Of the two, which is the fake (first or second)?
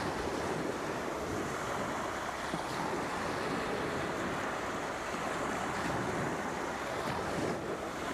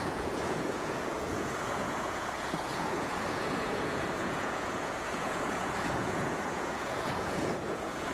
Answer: second